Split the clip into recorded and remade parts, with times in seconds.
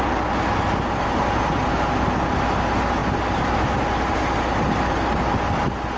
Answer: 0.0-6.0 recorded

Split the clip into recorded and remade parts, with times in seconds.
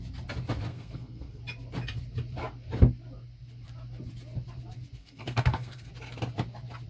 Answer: 0.0-0.7 recorded; 0.7-1.4 remade; 1.4-5.0 recorded; 5.0-5.9 remade; 5.9-6.9 recorded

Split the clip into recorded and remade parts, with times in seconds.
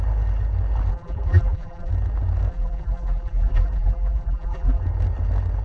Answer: 0.0-0.9 recorded; 0.9-1.9 remade; 1.9-2.5 recorded; 2.5-4.8 remade; 4.8-5.6 recorded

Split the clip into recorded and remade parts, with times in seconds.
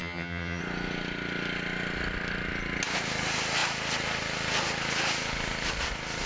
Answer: 0.0-0.6 remade; 0.6-6.3 recorded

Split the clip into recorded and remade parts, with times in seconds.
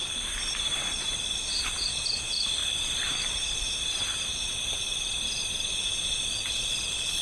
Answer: 0.0-1.2 remade; 1.2-2.6 recorded; 2.6-7.2 remade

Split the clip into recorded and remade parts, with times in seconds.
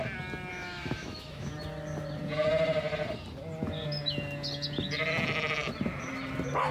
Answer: 0.0-0.5 recorded; 0.5-1.5 remade; 1.5-6.7 recorded